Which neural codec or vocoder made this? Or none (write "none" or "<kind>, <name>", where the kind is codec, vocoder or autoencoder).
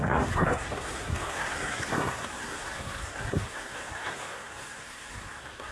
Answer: codec, SNAC